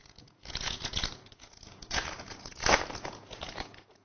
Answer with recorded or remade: remade